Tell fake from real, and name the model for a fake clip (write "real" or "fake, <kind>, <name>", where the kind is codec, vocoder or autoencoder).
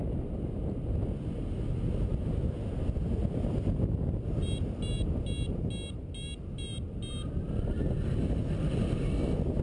real